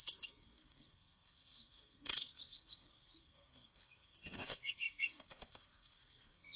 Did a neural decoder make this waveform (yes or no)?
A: yes